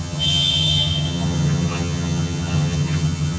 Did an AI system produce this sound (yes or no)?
yes